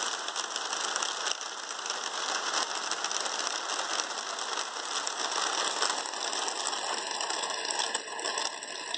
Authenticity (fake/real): real